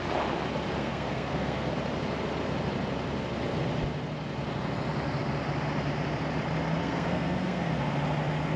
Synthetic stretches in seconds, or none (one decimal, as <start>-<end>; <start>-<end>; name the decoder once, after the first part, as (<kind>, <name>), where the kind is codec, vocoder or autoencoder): 0.8-1.7 (codec, SNAC); 6.8-7.8